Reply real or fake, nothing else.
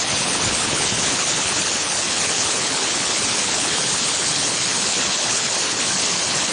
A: fake